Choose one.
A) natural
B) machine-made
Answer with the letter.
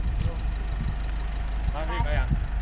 A